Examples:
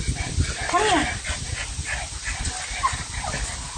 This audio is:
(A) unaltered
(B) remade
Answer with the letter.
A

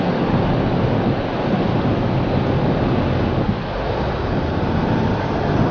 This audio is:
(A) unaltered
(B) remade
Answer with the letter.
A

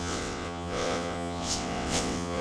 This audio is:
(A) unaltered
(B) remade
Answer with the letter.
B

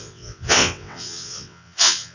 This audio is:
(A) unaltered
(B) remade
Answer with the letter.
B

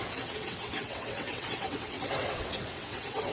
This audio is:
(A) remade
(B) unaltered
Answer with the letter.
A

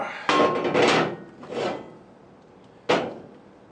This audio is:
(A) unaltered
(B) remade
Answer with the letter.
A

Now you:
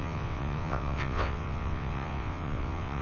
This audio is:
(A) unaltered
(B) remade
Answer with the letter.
B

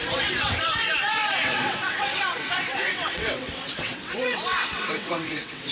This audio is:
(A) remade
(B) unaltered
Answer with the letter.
A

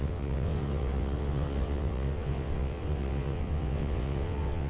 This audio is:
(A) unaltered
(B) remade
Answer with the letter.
B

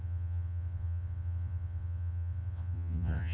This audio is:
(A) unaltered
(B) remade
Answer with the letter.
B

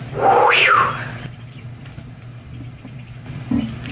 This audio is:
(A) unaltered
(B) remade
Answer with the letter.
A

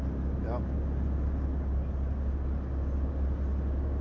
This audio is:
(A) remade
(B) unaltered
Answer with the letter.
B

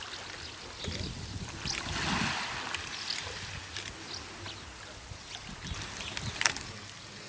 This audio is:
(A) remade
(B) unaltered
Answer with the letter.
B